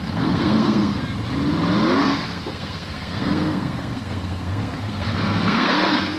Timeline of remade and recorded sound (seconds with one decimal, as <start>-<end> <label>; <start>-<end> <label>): 0.0-1.0 remade; 1.0-2.0 recorded; 2.0-6.2 remade